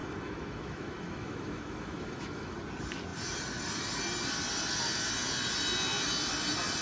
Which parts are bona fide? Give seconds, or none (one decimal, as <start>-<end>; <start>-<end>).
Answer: 2.6-6.8